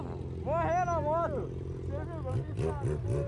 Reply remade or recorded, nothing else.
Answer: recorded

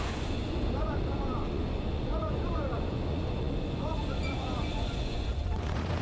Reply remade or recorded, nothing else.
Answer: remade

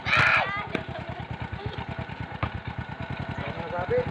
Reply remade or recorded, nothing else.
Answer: recorded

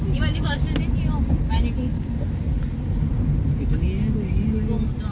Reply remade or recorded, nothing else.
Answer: recorded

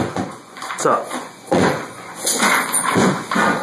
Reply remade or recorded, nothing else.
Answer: remade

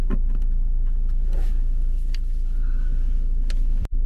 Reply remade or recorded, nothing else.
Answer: recorded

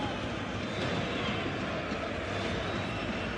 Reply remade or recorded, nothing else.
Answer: recorded